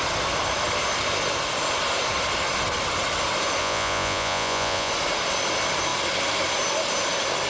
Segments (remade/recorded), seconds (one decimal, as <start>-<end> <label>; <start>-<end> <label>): 0.0-3.6 recorded; 3.6-4.9 remade; 4.9-7.5 recorded